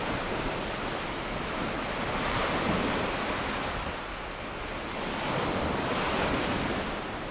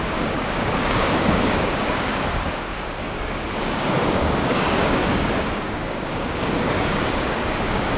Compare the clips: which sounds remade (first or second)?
second